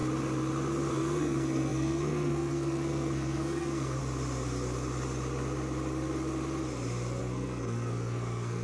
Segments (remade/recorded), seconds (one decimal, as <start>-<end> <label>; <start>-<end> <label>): 0.0-0.9 recorded; 0.9-4.0 remade; 4.0-7.2 recorded; 7.2-8.6 remade